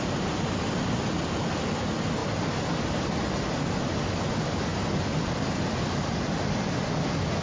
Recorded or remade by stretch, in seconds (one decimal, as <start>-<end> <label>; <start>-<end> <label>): 0.0-2.2 recorded; 2.2-3.8 remade; 3.8-7.4 recorded